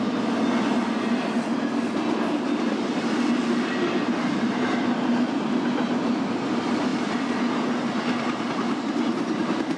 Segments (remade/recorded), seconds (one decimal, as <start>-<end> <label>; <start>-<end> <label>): 0.0-9.8 recorded